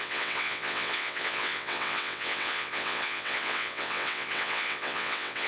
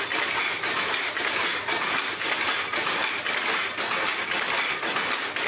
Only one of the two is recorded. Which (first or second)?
second